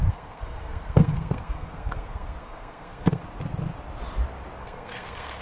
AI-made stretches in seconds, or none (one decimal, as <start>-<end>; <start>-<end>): 0.0-3.2; 4.6-5.4